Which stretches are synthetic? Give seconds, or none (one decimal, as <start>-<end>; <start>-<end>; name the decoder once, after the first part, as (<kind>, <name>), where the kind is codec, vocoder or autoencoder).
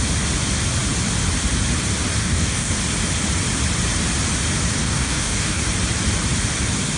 2.2-2.7 (codec, DAC); 4.8-5.6